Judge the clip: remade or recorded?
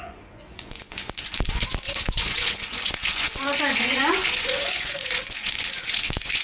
remade